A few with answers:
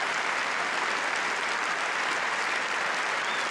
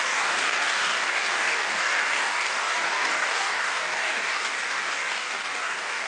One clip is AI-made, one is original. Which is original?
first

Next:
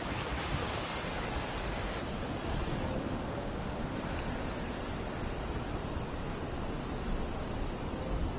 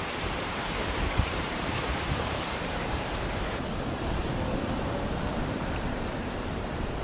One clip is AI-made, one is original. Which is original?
first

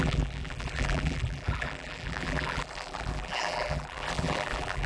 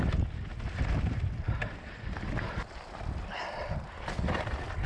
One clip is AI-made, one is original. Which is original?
second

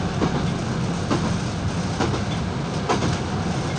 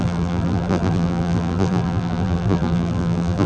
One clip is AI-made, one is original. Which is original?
first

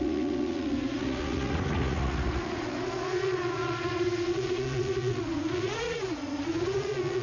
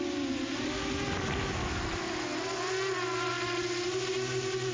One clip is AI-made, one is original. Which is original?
second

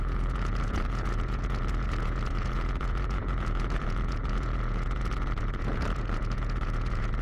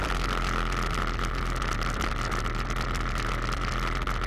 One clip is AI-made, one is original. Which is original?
second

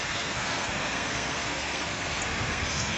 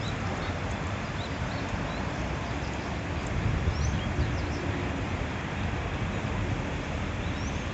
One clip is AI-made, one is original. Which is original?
second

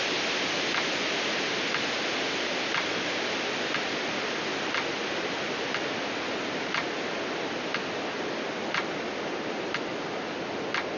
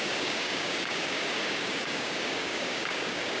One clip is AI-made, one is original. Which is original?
first